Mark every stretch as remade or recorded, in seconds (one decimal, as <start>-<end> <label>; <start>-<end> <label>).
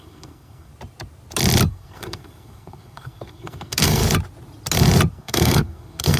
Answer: 0.0-0.7 remade; 0.7-1.7 recorded; 1.7-4.0 remade; 4.0-5.1 recorded; 5.1-6.2 remade